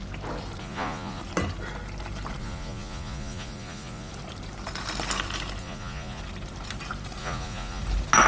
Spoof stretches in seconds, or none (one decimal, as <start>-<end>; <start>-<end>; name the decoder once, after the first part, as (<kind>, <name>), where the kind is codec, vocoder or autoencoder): 0.6-1.2 (vocoder, Vocos); 2.4-4.1; 5.6-6.2; 7.2-7.8